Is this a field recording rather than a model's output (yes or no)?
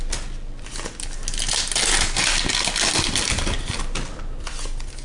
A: yes